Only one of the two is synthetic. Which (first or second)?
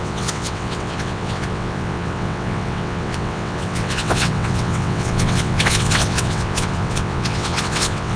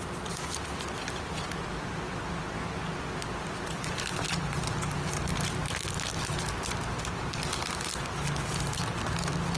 first